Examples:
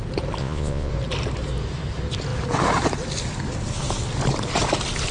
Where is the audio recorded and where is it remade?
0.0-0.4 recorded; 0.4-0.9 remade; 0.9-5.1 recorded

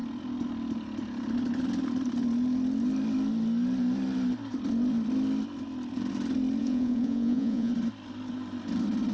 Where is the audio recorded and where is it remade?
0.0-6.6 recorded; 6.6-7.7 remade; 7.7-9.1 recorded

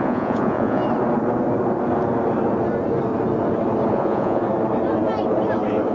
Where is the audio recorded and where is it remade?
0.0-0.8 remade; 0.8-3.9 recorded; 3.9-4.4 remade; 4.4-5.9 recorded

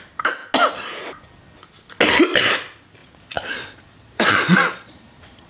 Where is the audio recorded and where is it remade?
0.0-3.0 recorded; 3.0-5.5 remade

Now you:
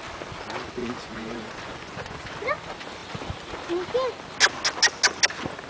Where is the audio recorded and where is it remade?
0.0-0.8 recorded; 0.8-2.3 remade; 2.3-5.7 recorded

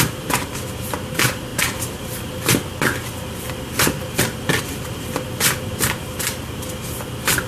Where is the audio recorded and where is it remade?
0.0-7.5 recorded

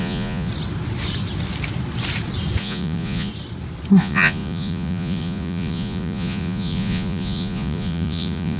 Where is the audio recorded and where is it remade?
0.0-0.5 remade; 0.5-2.6 recorded; 2.6-3.3 remade; 3.3-4.0 recorded; 4.0-8.6 remade

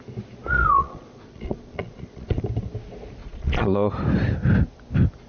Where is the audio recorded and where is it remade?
0.0-0.5 recorded; 0.5-2.4 remade; 2.4-3.2 recorded; 3.2-3.9 remade; 3.9-5.3 recorded